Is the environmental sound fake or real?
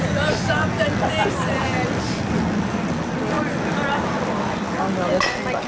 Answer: real